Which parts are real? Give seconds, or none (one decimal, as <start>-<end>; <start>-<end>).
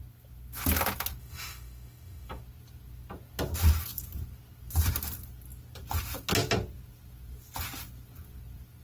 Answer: 0.0-1.2; 2.4-8.8